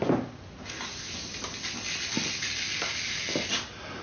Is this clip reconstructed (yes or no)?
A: no